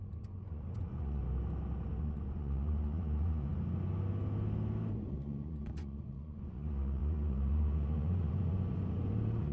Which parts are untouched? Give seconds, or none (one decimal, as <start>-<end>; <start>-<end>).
1.2-2.0; 3.5-4.9